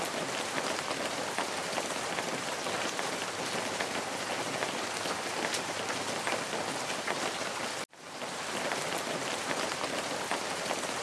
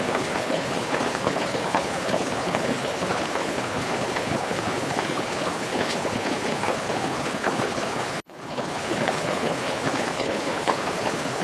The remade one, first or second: second